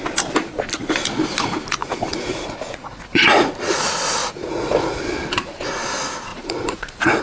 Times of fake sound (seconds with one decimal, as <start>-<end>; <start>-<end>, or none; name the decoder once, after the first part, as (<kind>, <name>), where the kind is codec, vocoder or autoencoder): 1.8-3.5 (vocoder, Vocos); 4.2-5.0; 6.3-7.2